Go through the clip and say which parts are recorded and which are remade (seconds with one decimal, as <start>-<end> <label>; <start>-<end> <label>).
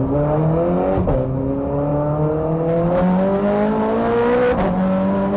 0.0-5.4 recorded